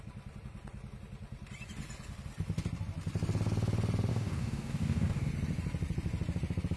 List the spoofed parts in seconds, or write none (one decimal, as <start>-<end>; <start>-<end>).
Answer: 4.1-5.3